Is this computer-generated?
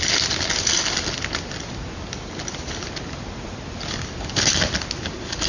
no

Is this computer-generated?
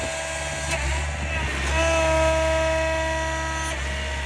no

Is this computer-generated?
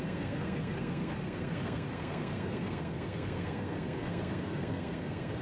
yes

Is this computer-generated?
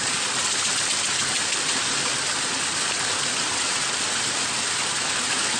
no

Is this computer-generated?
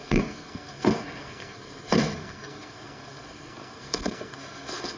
yes